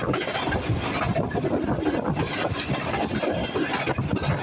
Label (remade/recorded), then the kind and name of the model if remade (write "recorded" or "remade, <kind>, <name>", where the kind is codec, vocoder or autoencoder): recorded